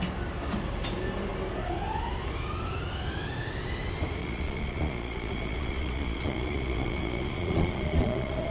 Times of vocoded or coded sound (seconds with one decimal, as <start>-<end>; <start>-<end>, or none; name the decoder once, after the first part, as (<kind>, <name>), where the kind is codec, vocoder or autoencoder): 4.2-8.5 (vocoder, Vocos)